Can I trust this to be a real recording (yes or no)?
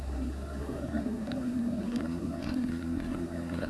no